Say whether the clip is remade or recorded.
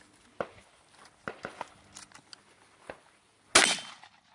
recorded